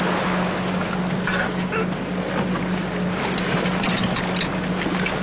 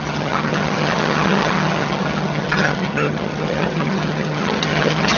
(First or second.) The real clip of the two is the first